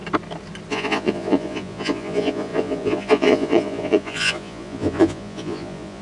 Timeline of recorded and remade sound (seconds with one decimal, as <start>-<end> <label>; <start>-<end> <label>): 0.0-0.7 recorded; 0.7-6.0 remade